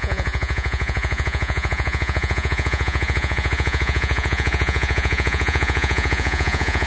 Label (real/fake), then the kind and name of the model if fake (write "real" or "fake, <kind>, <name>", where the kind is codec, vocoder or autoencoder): fake, vocoder, Vocos